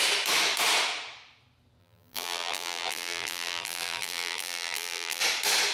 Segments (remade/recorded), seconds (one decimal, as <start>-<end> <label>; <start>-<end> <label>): 0.0-1.8 recorded; 1.8-5.2 remade; 5.2-5.7 recorded